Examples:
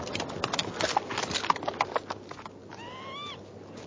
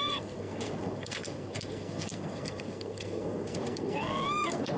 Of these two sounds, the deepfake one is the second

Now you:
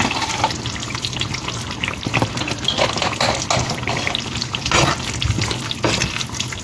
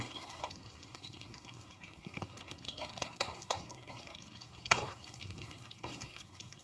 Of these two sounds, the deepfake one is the second